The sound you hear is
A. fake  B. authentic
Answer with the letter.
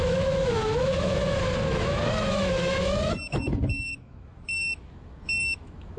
A